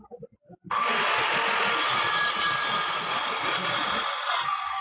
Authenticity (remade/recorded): recorded